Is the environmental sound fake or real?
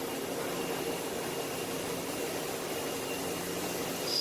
real